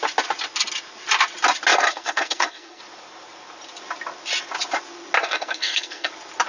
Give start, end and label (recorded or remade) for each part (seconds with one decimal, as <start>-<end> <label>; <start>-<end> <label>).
0.0-1.7 recorded; 1.7-2.8 remade; 2.8-5.2 recorded; 5.2-6.1 remade; 6.1-6.5 recorded